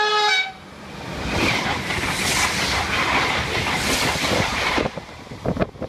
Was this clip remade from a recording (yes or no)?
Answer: no